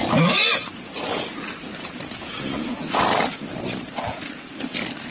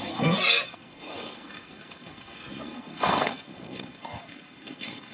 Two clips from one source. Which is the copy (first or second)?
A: second